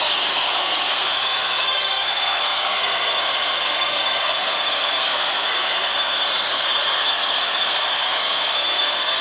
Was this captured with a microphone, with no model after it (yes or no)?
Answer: no